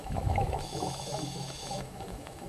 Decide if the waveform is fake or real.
fake